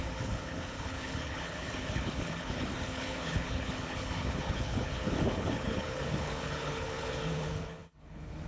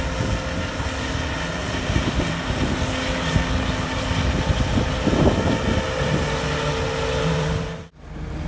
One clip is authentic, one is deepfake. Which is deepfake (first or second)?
first